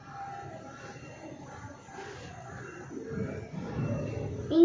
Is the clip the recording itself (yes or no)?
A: yes